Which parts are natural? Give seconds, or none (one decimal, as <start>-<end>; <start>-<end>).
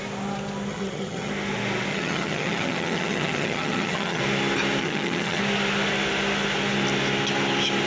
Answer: 0.0-0.7; 1.3-1.9; 4.2-4.8; 5.4-7.9